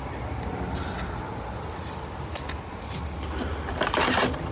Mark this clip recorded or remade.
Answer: recorded